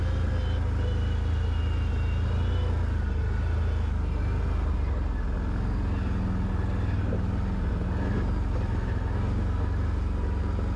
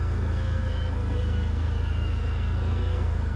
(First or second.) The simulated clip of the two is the second